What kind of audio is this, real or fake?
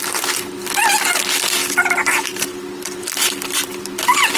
real